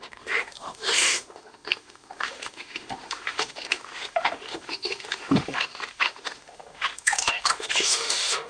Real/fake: fake